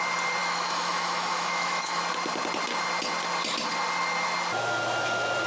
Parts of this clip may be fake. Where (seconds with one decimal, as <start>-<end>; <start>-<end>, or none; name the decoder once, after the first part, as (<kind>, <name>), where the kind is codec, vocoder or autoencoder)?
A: 0.4-2.0 (autoencoder, DAC-VAE)